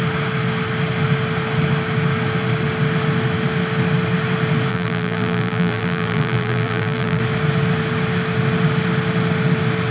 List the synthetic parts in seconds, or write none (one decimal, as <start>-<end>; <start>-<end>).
4.7-7.2